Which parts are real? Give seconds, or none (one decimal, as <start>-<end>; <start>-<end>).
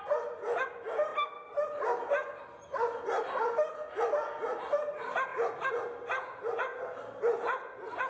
0.0-8.1